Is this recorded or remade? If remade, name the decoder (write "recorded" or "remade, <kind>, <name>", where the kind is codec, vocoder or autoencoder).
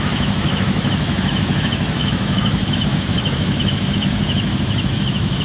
remade, autoencoder, DAC-VAE